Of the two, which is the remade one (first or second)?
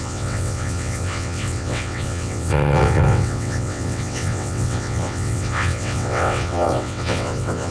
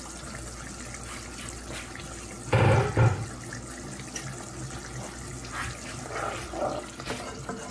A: first